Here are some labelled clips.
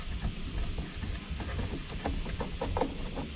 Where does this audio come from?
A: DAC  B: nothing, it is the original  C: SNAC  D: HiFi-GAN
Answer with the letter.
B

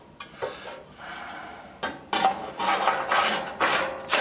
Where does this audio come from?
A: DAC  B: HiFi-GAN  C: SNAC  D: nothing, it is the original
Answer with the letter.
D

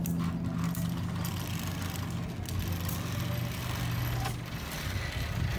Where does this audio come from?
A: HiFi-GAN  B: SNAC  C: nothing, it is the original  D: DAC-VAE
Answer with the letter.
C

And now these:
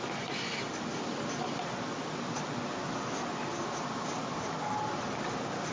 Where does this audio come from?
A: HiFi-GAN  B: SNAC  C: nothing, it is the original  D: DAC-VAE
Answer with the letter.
C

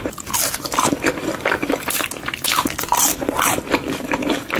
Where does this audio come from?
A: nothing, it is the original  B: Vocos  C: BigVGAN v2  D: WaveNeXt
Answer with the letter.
C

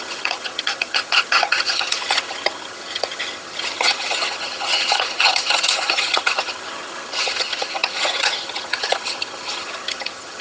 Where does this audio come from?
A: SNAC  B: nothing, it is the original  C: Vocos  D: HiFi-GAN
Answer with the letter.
D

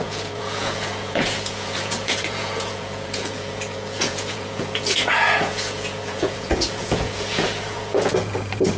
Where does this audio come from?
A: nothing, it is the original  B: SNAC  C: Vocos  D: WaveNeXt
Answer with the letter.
C